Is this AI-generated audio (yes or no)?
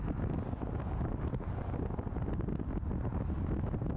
no